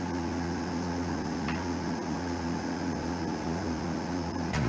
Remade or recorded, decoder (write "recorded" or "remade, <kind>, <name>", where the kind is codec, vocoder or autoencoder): remade, vocoder, Vocos